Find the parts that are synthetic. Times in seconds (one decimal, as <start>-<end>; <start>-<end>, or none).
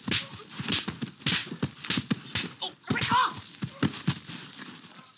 none